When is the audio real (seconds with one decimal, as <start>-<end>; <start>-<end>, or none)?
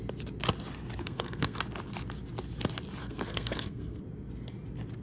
0.0-1.0; 1.6-3.0; 4.0-5.0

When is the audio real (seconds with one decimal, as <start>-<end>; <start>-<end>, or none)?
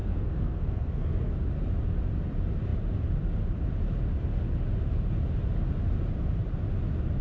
1.3-7.2